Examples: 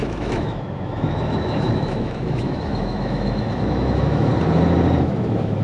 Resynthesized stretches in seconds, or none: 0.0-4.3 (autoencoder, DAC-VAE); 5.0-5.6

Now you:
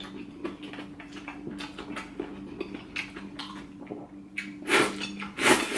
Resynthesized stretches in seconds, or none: none

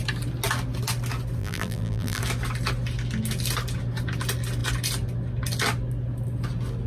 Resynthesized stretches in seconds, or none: 1.4-2.2 (vocoder, BigVGAN v2)

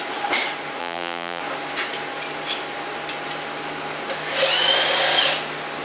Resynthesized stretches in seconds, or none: 0.8-1.4 (vocoder, BigVGAN v2)

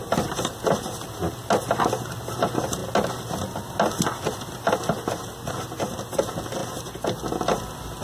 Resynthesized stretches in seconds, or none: none

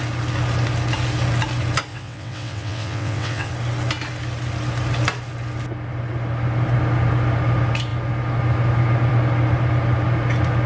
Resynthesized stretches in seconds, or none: 1.9-3.5 (vocoder, WaveNeXt)

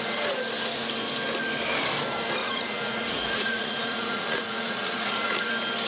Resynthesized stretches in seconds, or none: 2.4-5.5 (vocoder, Vocos)